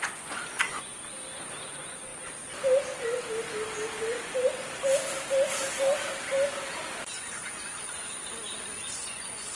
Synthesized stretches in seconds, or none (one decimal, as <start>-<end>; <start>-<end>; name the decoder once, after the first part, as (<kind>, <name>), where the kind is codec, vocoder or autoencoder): 0.0-0.9 (vocoder, Vocos); 1.6-2.1; 7.1-8.2; 8.8-9.5